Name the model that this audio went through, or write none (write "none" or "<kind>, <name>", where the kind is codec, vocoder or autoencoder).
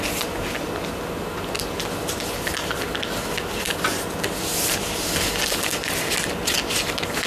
none